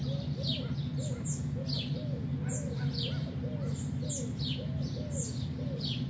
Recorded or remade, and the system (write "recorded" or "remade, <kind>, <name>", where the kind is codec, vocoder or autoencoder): recorded